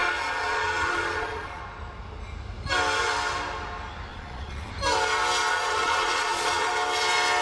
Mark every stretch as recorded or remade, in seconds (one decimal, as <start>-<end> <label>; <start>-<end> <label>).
0.0-1.6 remade; 1.6-4.1 recorded; 4.1-4.7 remade; 4.7-5.5 recorded; 5.5-6.7 remade; 6.7-7.4 recorded